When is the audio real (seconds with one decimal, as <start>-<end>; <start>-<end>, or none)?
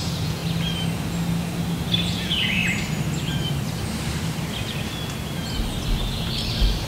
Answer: 0.4-2.1; 2.6-6.9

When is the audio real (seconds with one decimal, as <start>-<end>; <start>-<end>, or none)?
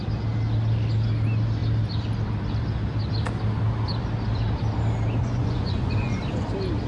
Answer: 0.0-5.2; 6.2-6.9